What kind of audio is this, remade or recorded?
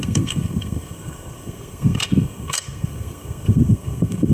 remade